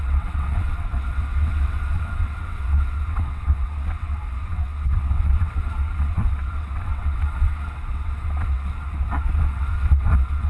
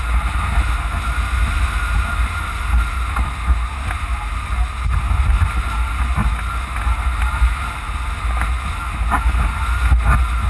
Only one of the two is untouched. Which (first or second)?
second